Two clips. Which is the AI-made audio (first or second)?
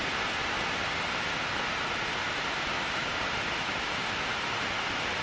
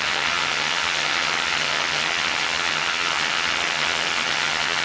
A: second